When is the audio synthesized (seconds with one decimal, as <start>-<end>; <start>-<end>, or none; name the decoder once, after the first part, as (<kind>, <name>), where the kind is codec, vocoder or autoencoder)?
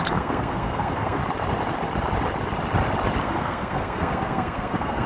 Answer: 0.0-1.2 (codec, SNAC); 3.2-5.1